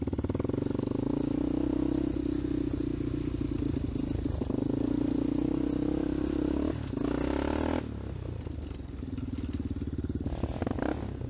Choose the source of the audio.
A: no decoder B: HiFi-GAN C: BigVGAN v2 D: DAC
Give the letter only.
A